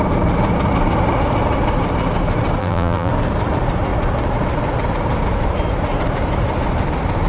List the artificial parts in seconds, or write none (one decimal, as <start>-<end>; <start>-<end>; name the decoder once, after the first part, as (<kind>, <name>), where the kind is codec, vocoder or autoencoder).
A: 2.6-3.1 (vocoder, BigVGAN v2)